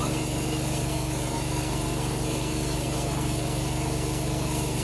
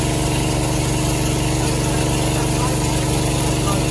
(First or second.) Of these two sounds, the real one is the second